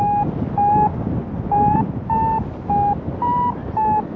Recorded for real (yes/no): yes